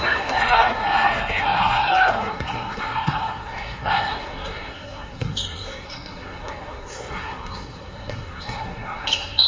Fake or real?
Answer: fake